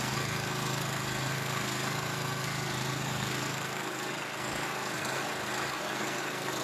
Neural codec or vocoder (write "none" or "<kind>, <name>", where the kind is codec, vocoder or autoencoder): codec, SNAC